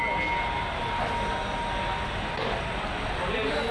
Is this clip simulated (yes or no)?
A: no